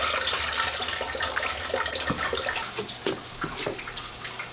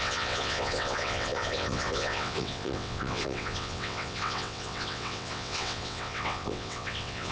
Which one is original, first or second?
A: first